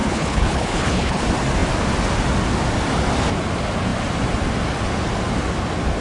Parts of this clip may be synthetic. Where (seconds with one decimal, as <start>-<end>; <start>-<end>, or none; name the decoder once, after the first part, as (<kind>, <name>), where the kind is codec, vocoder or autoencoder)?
0.0-1.2 (codec, HILCodec)

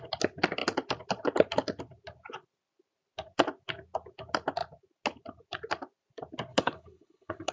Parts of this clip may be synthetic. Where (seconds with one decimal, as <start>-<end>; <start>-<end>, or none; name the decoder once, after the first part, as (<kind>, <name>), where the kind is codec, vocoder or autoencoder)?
6.5-7.5 (codec, HILCodec)

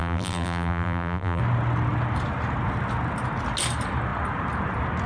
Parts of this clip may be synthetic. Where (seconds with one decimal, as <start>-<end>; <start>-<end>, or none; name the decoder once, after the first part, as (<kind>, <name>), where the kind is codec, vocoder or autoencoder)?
0.0-1.4 (vocoder, BigVGAN v2)